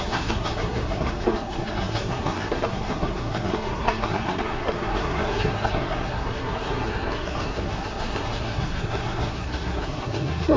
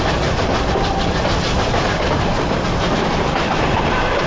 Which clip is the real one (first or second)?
second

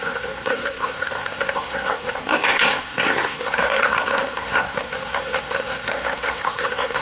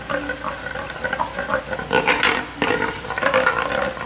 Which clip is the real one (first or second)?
second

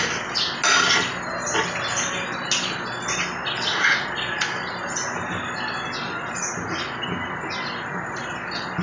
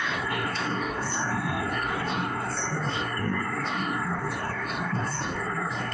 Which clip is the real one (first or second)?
first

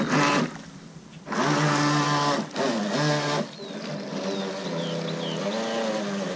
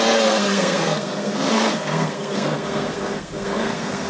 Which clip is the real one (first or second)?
first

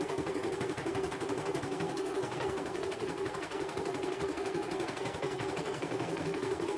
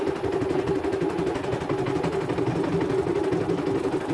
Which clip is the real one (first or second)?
second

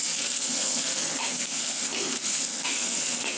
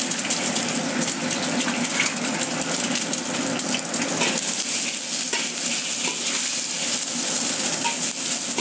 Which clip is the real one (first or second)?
second